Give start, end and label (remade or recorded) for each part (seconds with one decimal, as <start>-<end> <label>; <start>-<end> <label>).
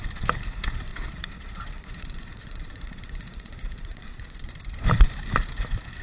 0.0-0.9 recorded; 0.9-4.5 remade; 4.5-6.0 recorded